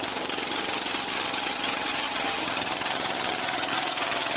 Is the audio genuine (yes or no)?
no